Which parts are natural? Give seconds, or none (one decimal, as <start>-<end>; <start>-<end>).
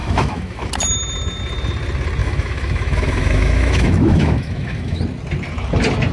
0.7-2.2; 5.0-6.1